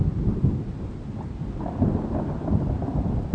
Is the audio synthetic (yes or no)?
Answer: no